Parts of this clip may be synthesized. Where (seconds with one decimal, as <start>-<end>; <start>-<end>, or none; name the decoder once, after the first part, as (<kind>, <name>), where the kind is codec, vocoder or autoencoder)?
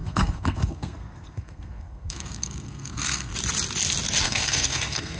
0.0-3.3 (codec, SNAC); 4.2-5.2